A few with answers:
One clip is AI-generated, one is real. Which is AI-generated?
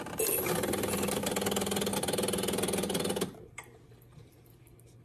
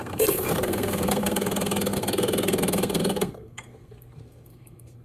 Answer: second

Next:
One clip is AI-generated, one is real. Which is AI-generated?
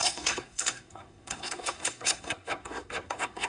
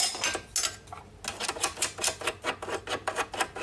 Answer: first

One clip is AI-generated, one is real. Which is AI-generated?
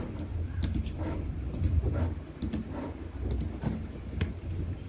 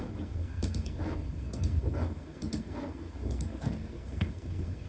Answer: second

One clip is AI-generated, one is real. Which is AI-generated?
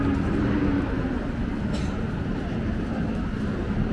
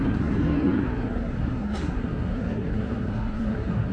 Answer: second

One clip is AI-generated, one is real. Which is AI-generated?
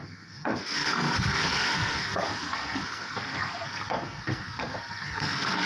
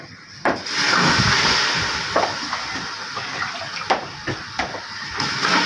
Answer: first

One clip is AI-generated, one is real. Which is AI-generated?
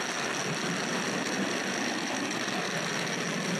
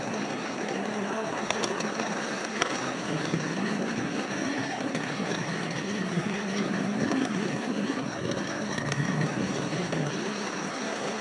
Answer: second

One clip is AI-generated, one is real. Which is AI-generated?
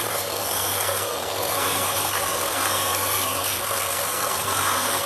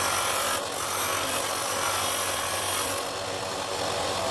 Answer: first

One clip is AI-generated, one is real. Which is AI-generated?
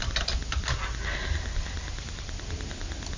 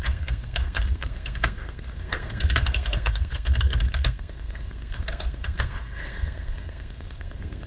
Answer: second